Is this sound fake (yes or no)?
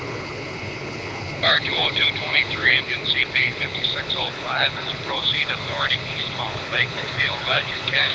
yes